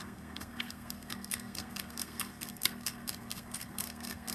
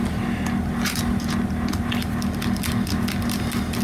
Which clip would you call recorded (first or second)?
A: second